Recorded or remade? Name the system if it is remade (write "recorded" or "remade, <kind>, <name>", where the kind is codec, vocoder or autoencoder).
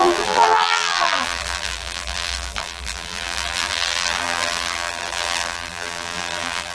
remade, vocoder, BigVGAN v2